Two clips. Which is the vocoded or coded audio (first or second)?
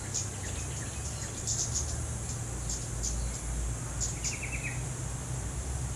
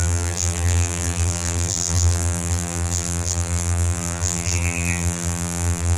second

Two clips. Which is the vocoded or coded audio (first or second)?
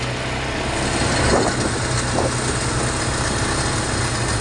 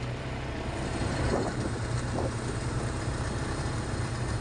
second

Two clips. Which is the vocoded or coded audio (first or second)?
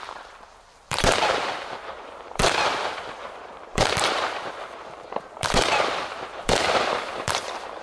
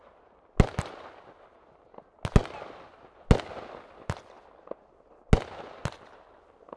first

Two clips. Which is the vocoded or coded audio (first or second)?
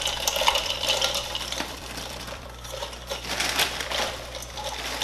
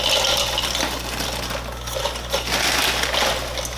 first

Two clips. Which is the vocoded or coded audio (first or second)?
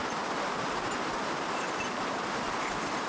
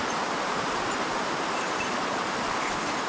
second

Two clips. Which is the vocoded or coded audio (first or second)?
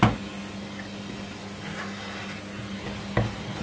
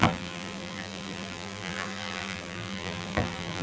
second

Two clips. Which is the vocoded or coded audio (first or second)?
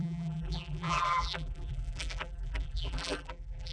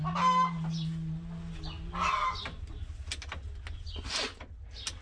first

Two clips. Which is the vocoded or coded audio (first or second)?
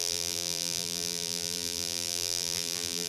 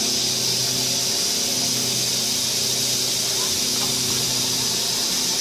first